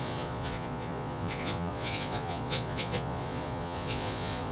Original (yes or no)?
no